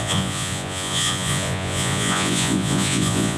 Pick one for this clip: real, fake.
fake